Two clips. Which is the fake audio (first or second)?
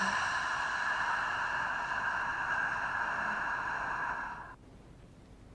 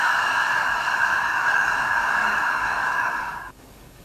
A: second